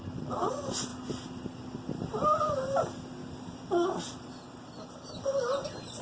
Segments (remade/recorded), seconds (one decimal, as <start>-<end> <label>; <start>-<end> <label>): 0.0-6.0 recorded